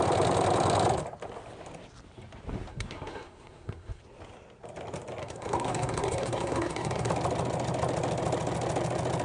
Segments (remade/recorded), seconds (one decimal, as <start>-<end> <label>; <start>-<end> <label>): 0.0-2.7 recorded; 2.7-4.0 remade; 4.0-5.2 recorded; 5.2-7.1 remade; 7.1-9.2 recorded